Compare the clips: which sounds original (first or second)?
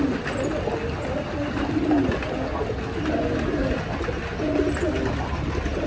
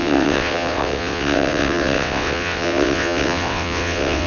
first